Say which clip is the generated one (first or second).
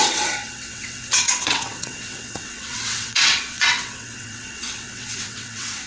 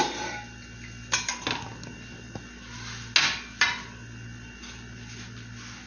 first